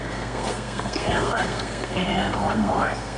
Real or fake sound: fake